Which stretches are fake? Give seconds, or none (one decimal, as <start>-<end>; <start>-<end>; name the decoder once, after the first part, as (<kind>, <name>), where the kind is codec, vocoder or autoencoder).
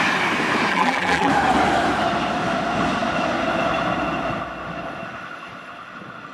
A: 0.7-1.3 (vocoder, BigVGAN v2)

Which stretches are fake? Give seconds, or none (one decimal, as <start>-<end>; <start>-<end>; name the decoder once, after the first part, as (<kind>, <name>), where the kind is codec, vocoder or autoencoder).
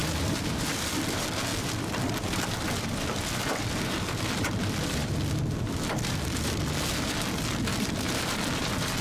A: 0.0-0.9 (vocoder, BigVGAN v2); 1.5-6.6; 7.7-9.0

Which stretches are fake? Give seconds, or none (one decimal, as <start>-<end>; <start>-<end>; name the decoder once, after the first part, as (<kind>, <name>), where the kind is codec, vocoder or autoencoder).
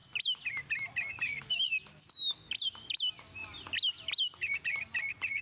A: none